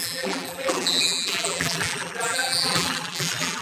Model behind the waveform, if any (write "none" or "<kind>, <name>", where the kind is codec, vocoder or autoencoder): vocoder, BigVGAN v2